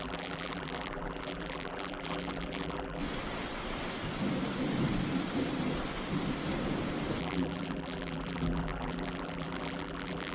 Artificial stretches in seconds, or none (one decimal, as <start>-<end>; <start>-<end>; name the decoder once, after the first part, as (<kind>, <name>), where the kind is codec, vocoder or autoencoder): 0.0-3.0 (vocoder, BigVGAN v2); 7.2-10.3